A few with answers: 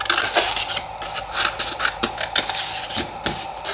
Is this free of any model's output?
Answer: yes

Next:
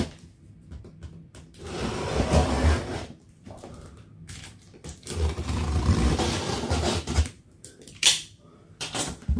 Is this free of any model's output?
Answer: no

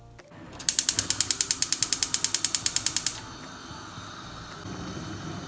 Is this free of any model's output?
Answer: yes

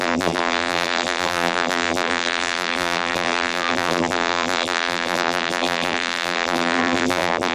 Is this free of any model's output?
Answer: no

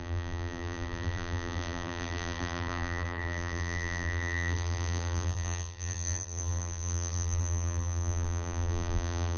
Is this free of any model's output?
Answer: no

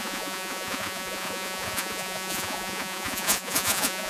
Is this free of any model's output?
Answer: no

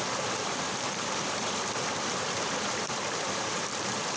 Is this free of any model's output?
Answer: no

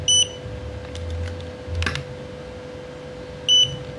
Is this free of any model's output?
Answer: yes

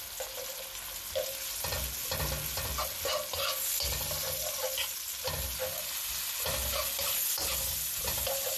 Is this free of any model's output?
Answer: yes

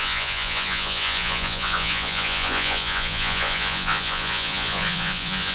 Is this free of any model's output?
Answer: no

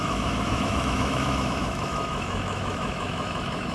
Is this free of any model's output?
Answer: no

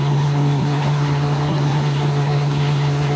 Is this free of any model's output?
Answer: no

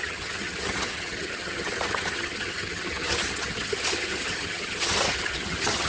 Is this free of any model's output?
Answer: no